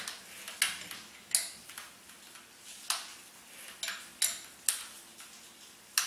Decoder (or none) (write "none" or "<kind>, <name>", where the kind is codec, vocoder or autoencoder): none